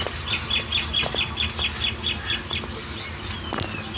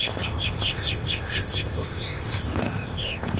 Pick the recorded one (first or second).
first